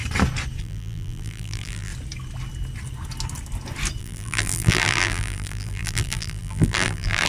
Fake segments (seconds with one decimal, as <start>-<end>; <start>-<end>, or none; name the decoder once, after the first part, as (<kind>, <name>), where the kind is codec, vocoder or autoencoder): 0.6-1.9 (vocoder, BigVGAN v2); 4.0-7.3